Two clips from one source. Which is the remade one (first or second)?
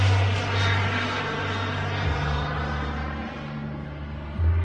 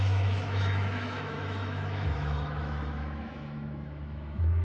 second